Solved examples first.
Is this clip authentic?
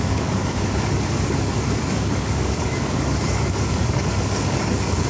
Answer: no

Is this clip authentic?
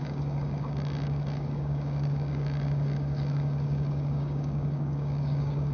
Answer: no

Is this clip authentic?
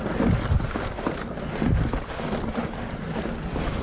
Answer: yes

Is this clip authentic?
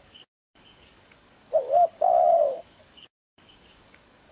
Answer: no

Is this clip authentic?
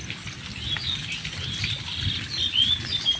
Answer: yes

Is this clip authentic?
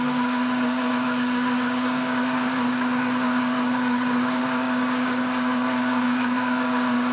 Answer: no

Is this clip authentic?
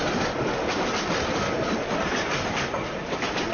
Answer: yes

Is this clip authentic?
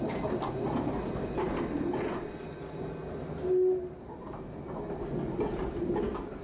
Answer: yes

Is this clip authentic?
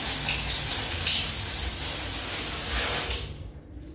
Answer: yes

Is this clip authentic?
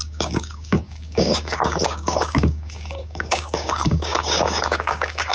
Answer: no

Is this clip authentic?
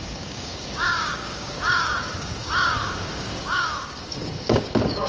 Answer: no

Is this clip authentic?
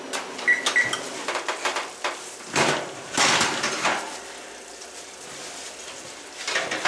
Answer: yes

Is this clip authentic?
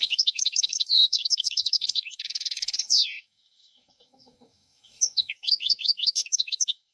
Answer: no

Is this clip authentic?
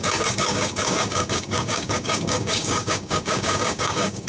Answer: no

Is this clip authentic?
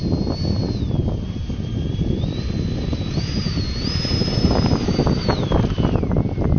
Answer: yes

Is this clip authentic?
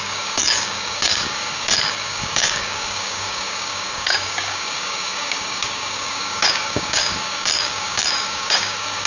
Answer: no